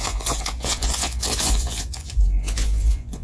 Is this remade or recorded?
remade